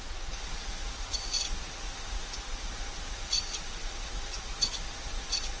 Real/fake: fake